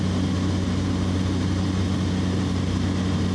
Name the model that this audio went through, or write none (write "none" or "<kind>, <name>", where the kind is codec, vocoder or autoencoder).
none